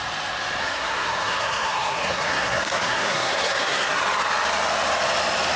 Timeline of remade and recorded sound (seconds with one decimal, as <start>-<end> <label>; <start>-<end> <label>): 0.0-0.6 recorded; 0.6-4.0 remade; 4.0-5.6 recorded